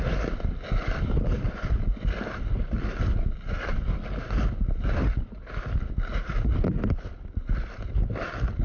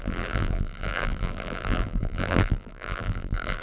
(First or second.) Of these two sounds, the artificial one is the second